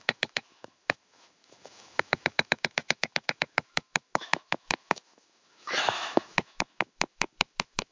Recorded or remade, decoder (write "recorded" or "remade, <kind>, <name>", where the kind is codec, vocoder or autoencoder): remade, autoencoder, DAC-VAE